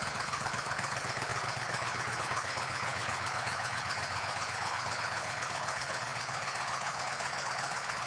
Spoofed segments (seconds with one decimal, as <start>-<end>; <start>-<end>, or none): 0.0-8.1